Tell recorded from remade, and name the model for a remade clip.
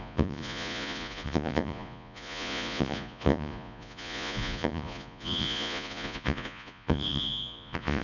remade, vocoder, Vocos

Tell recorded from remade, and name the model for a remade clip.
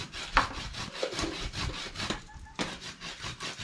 recorded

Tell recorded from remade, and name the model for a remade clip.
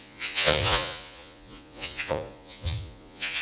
remade, vocoder, Vocos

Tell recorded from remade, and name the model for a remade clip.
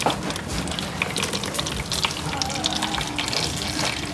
recorded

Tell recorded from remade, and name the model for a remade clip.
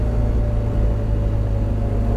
recorded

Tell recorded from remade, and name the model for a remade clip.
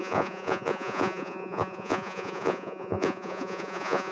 remade, vocoder, Vocos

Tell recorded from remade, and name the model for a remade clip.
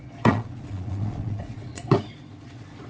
remade, vocoder, Vocos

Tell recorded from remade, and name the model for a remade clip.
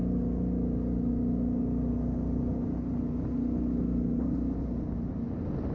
recorded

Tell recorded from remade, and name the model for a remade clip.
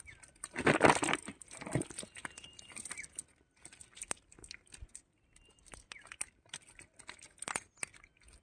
recorded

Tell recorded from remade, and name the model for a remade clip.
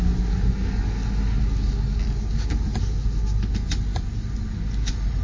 recorded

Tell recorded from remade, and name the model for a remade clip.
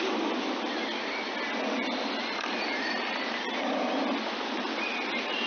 recorded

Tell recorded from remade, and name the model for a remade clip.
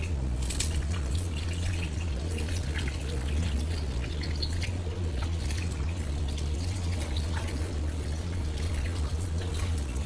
remade, vocoder, Vocos